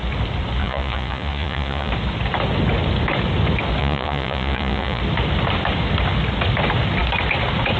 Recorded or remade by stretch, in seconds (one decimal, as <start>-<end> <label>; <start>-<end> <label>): 0.0-0.6 recorded; 0.6-1.9 remade; 1.9-3.8 recorded; 3.8-5.0 remade; 5.0-7.8 recorded